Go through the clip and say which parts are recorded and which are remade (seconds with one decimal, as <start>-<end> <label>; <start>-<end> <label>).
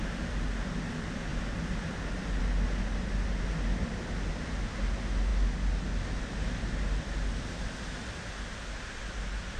0.0-9.6 recorded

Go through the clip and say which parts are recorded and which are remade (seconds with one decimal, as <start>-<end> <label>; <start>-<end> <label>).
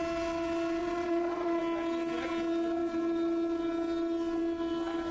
0.0-0.8 recorded; 0.8-1.6 remade; 1.6-5.1 recorded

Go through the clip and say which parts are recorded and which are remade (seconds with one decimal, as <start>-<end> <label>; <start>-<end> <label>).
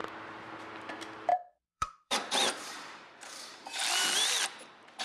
0.0-1.3 recorded; 1.3-4.3 remade; 4.3-5.0 recorded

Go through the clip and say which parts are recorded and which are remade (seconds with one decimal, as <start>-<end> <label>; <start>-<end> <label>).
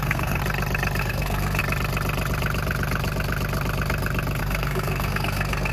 0.0-0.4 remade; 0.4-1.0 recorded; 1.0-1.6 remade; 1.6-4.4 recorded; 4.4-5.7 remade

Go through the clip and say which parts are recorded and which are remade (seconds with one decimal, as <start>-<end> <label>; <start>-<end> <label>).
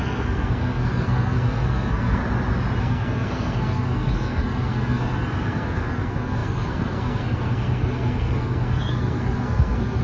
0.0-2.2 remade; 2.2-2.8 recorded; 2.8-10.0 remade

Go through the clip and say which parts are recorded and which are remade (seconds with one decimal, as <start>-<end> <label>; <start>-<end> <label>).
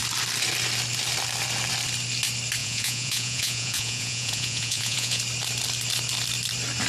0.0-2.6 recorded; 2.6-5.2 remade; 5.2-6.9 recorded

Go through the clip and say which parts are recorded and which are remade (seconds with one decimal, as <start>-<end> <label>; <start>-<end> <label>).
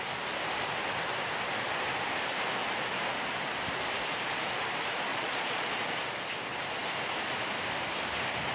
0.0-5.1 recorded; 5.1-5.7 remade; 5.7-8.5 recorded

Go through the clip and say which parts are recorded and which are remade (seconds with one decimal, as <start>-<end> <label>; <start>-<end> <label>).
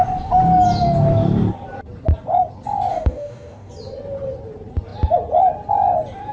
0.0-2.9 recorded; 2.9-3.7 remade; 3.7-6.3 recorded